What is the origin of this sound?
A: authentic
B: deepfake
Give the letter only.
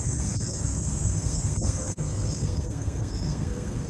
B